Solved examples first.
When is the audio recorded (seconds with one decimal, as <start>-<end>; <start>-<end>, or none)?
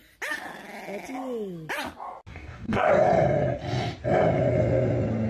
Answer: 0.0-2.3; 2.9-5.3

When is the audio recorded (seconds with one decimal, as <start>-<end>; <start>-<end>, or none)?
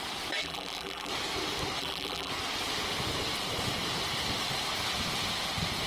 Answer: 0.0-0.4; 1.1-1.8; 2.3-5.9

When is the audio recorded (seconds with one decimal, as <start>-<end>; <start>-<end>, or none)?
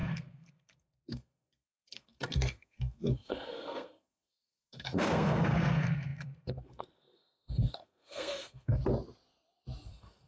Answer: 8.8-9.9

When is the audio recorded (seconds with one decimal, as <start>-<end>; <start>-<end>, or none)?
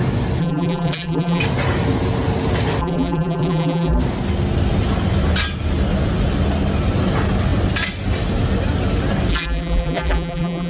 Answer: 0.0-0.4; 1.4-2.8; 4.0-9.3